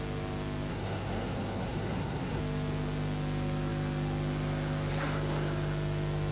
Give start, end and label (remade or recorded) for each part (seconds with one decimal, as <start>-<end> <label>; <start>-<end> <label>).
0.0-0.7 recorded; 0.7-2.4 remade; 2.4-6.3 recorded